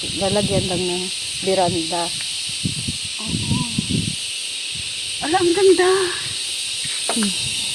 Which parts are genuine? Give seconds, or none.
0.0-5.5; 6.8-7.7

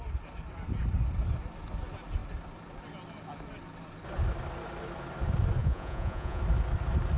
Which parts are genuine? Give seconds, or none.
0.0-5.6; 6.4-7.2

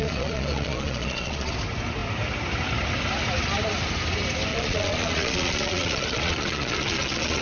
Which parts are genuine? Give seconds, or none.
1.5-4.5

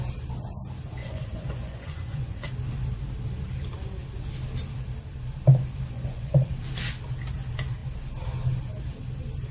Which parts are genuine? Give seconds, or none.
0.0-1.0; 2.5-5.9; 6.5-9.5

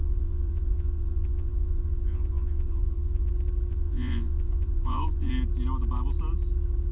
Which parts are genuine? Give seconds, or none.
3.3-3.7; 5.3-6.9

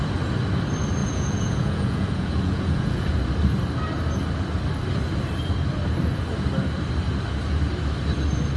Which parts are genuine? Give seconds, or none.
0.0-1.0; 3.2-8.6

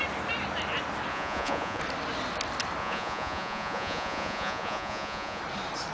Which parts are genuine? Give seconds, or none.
0.0-1.1; 1.8-2.8; 5.4-5.9

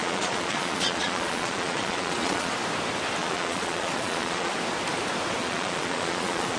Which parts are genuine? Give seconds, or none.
2.5-3.2; 4.5-5.4